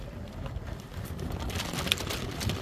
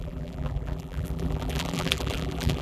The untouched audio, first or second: first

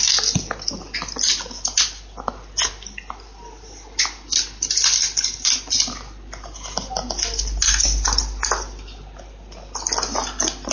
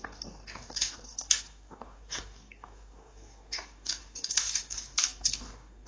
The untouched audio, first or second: first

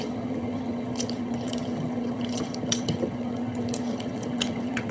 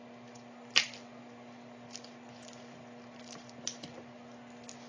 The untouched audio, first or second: second